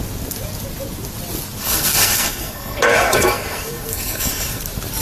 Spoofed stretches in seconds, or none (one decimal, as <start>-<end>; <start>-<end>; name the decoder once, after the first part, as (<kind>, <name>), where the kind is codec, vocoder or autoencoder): 1.6-4.6 (codec, SNAC)